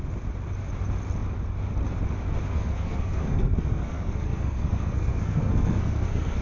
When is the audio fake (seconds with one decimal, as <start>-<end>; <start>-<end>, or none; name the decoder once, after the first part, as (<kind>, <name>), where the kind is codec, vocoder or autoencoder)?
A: 2.5-6.4 (codec, SNAC)

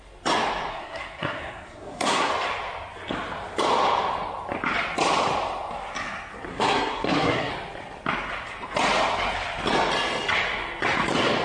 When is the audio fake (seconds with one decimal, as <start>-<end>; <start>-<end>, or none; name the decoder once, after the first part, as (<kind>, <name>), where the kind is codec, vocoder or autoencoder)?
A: 0.7-2.3 (codec, SNAC); 6.5-7.5

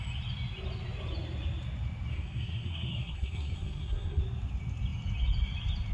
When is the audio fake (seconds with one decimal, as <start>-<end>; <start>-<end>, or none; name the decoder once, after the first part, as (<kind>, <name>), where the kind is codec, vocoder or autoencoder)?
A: 2.1-4.2 (codec, SNAC)

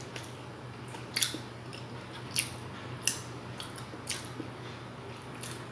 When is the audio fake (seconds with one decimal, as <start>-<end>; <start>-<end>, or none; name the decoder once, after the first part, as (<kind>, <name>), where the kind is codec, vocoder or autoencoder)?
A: none

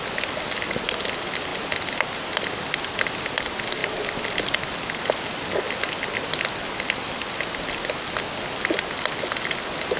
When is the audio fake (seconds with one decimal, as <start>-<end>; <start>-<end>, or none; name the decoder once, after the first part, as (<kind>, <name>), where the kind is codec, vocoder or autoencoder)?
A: none

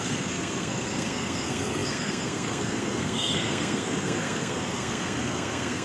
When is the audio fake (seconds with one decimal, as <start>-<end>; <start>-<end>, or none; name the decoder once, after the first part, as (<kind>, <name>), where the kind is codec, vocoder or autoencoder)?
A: 0.0-5.8 (codec, SNAC)

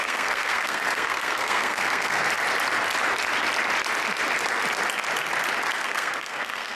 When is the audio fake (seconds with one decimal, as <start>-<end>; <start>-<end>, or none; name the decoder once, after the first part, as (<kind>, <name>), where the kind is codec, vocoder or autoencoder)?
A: 0.0-2.2 (codec, SNAC); 5.8-6.8